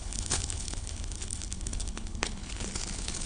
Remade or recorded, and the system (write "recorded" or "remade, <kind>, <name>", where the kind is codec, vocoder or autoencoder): remade, codec, HILCodec